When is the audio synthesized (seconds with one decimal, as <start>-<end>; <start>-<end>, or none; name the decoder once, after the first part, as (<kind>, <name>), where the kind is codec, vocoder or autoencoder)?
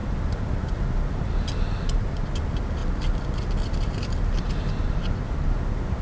none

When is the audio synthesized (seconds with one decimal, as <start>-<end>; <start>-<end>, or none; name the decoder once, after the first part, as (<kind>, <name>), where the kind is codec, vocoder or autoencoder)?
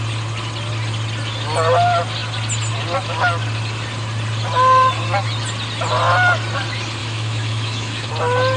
7.0-8.1 (autoencoder, DAC-VAE)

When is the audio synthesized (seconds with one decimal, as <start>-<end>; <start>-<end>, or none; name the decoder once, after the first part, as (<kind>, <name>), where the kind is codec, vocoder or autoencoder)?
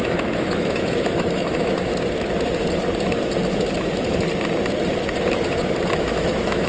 0.0-1.9 (autoencoder, DAC-VAE); 5.9-6.7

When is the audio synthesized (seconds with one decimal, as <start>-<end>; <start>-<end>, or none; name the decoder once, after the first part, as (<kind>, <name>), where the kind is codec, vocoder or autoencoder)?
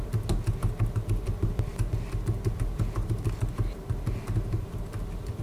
none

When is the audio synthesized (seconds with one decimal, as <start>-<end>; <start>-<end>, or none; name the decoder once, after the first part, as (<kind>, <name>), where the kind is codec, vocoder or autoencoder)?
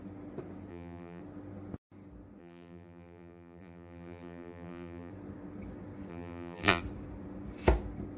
0.7-1.2 (vocoder, BigVGAN v2); 2.4-5.1; 6.1-6.8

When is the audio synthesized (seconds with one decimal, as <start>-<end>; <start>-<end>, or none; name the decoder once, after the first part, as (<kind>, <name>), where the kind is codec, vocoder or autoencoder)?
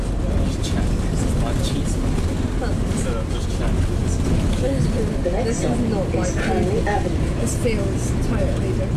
none